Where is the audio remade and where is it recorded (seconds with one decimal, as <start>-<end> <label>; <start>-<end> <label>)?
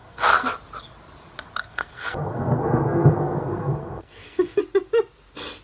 0.0-0.5 remade; 0.5-1.6 recorded; 1.6-4.6 remade; 4.6-5.6 recorded